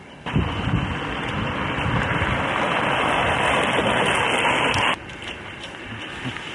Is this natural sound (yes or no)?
yes